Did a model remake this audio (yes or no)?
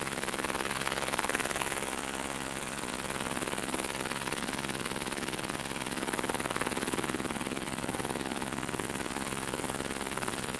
yes